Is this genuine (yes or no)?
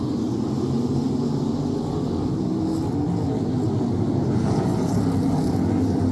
yes